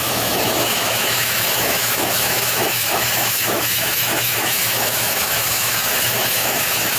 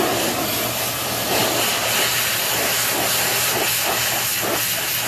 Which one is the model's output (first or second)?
first